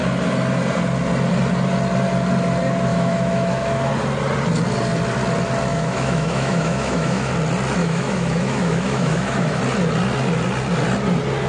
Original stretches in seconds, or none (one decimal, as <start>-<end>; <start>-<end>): 0.0-2.9; 3.9-5.7; 7.3-7.8; 9.6-11.5